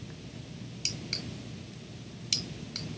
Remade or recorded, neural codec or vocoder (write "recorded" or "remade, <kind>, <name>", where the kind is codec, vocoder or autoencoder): recorded